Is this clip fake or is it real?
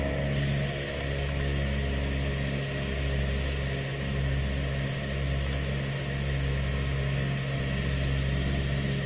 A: real